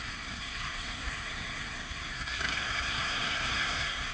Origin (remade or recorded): remade